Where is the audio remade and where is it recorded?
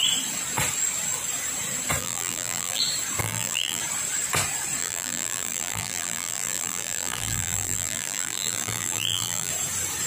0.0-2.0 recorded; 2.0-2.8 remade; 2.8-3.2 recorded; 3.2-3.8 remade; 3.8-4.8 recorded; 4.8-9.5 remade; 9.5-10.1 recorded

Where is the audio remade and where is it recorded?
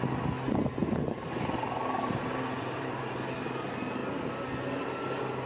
0.0-0.8 recorded; 0.8-3.0 remade; 3.0-5.5 recorded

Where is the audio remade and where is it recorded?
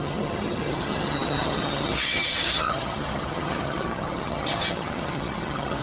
0.0-5.8 remade